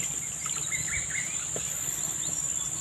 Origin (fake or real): real